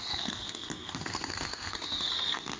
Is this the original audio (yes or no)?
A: no